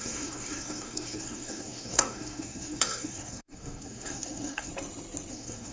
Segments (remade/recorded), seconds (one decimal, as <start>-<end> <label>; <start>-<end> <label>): 0.0-4.7 remade; 4.7-5.3 recorded; 5.3-5.7 remade